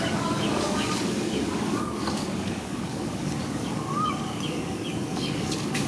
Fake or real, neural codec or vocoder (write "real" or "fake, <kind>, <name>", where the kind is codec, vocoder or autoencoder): fake, codec, DAC